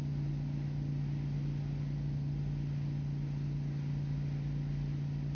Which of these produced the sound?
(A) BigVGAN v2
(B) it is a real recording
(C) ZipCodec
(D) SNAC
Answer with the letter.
B